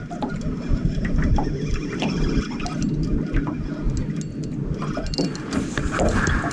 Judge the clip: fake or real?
real